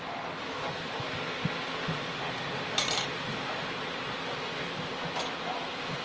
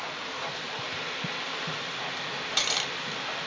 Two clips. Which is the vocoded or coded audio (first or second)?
second